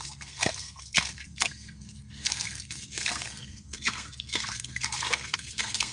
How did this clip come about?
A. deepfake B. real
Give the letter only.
A